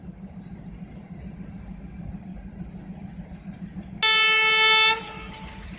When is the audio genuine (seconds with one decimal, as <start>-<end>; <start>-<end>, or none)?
0.0-5.8